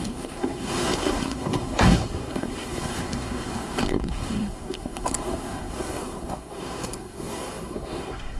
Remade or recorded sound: remade